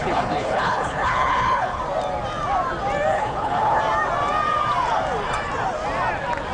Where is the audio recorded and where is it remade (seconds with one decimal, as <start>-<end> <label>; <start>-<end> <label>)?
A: 0.0-1.8 remade; 1.8-3.1 recorded; 3.1-3.8 remade; 3.8-6.5 recorded